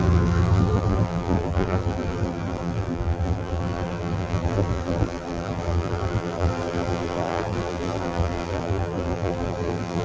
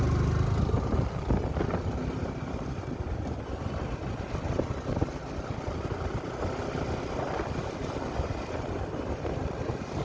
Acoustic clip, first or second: second